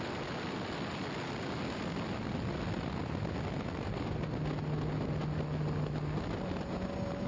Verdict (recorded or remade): recorded